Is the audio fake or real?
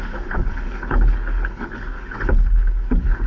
fake